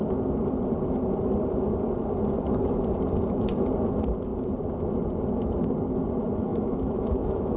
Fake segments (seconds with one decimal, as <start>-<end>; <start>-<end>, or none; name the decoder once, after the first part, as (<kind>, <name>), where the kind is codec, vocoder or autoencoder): 6.5-7.6 (autoencoder, DAC-VAE)